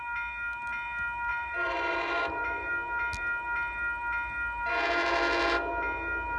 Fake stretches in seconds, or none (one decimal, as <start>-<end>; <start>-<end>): 1.3-2.7